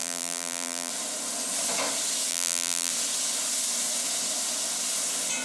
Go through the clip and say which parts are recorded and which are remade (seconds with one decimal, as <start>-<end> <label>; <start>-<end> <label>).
0.0-0.9 remade; 0.9-2.3 recorded; 2.3-2.9 remade; 2.9-5.4 recorded